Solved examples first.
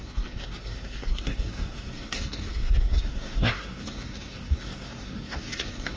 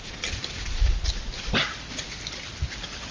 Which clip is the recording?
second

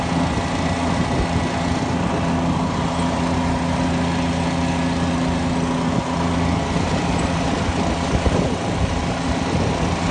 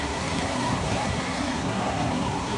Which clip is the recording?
first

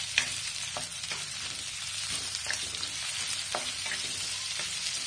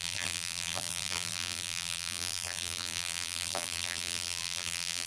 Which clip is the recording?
first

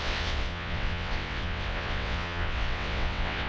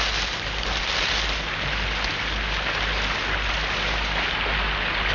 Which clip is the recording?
second